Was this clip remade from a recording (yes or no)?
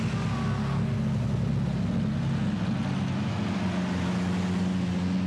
no